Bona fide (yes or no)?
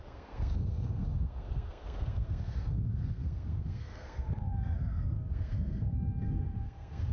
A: no